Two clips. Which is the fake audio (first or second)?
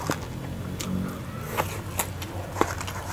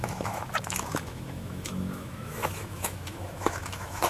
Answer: second